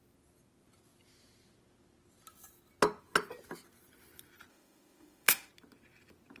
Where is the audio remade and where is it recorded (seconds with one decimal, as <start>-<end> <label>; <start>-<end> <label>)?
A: 0.0-4.5 recorded; 4.5-5.5 remade; 5.5-6.4 recorded